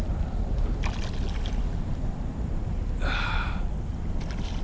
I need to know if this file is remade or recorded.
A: recorded